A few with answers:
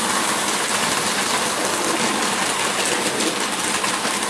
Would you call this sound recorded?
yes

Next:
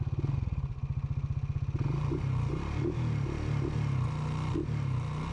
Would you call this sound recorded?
yes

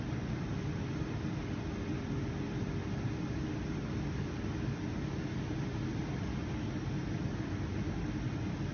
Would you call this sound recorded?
yes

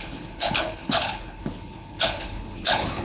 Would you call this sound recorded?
no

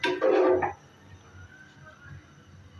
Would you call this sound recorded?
yes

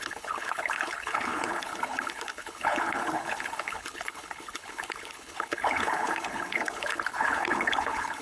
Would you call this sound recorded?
no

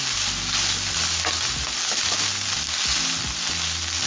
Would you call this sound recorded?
yes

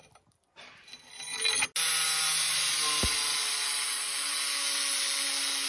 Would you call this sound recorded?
yes